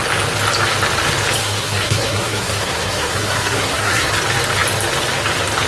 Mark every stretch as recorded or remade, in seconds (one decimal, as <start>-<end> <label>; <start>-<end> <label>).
0.0-1.4 recorded; 1.4-4.1 remade; 4.1-5.7 recorded